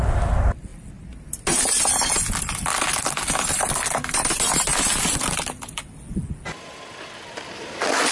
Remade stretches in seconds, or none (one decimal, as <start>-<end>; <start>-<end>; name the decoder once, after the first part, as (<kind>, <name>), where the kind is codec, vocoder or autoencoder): 4.7-5.8 (vocoder, BigVGAN v2)